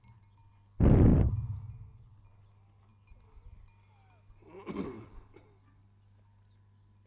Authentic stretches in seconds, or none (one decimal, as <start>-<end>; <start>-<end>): 0.0-7.1